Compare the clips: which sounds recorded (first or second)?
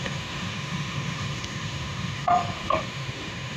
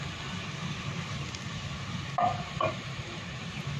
second